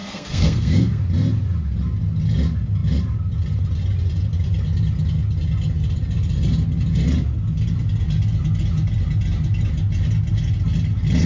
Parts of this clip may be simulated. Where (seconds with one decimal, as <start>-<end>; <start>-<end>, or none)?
0.0-1.0